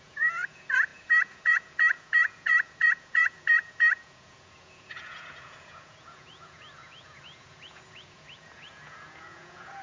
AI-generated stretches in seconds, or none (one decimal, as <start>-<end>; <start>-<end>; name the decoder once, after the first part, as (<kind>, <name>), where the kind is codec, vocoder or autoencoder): 0.0-9.8 (vocoder, Vocos)